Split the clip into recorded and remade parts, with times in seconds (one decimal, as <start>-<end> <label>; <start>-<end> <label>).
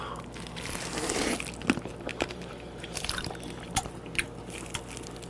0.0-2.1 recorded; 2.1-3.3 remade; 3.3-5.3 recorded